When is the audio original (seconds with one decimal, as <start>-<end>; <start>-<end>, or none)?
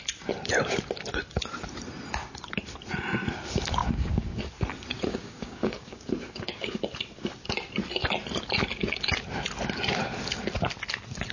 0.0-3.8; 4.4-5.1; 6.8-11.3